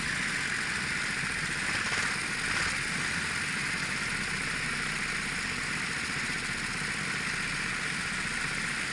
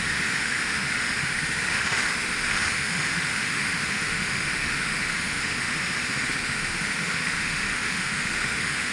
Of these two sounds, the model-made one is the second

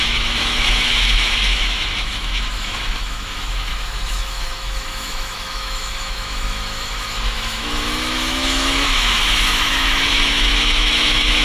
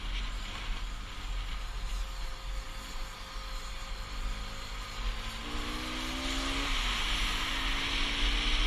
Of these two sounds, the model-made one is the first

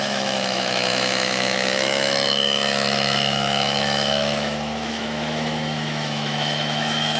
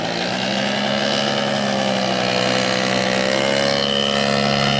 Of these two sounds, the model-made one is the first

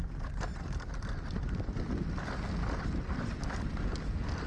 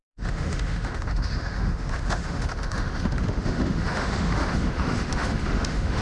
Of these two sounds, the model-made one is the second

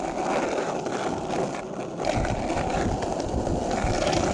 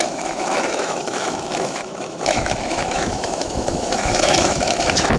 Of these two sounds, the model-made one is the second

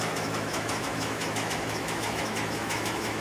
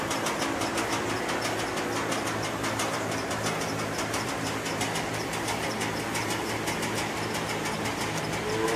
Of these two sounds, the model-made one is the first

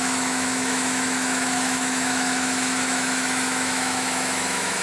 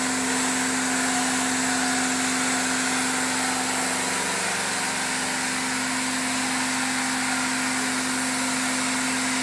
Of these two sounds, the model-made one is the first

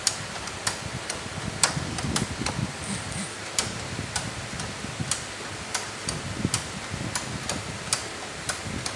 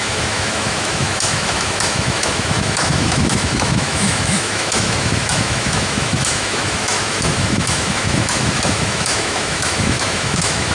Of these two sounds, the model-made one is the second